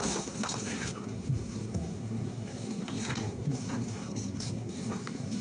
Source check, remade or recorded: remade